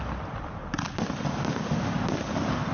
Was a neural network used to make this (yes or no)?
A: no